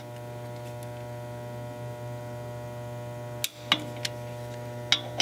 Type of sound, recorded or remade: recorded